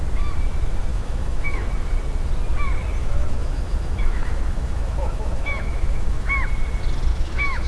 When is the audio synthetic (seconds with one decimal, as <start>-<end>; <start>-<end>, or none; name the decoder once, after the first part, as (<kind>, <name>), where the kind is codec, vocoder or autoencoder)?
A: 0.9-1.7 (autoencoder, DAC-VAE); 3.0-6.5; 7.1-7.7